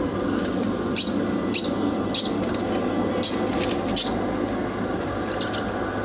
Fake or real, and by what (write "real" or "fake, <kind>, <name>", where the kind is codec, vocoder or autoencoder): real